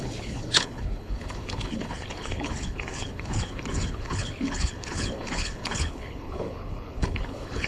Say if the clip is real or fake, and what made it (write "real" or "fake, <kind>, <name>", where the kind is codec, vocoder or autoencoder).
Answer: fake, codec, HILCodec